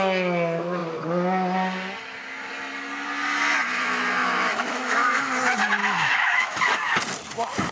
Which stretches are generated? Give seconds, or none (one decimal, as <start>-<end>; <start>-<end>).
4.2-5.2; 5.8-6.6